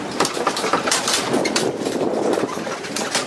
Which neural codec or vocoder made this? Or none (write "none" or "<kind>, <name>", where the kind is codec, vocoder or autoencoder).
vocoder, BigVGAN v2